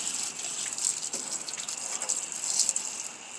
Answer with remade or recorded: recorded